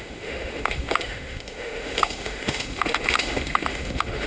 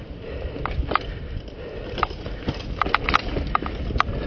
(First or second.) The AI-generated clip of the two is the first